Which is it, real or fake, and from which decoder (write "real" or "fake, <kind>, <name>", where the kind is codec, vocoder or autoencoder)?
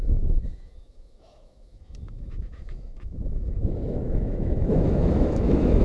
fake, autoencoder, DAC-VAE